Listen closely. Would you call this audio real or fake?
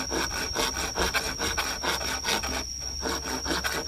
real